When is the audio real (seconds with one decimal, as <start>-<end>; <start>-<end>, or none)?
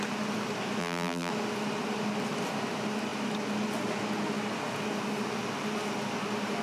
0.0-0.8; 1.3-6.6